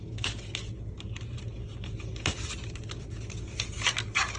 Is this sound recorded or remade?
recorded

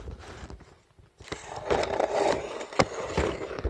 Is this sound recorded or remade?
recorded